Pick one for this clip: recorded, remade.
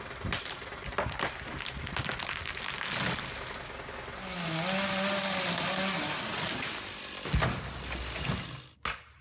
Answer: recorded